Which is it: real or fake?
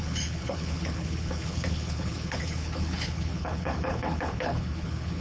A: fake